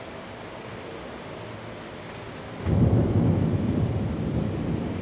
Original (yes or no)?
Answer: yes